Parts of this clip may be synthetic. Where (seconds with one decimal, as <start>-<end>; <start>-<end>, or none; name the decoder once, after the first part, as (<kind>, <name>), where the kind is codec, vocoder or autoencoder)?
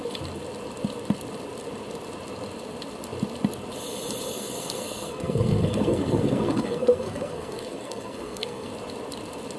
4.3-8.7 (codec, SNAC)